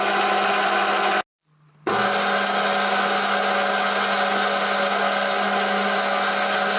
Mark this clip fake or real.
real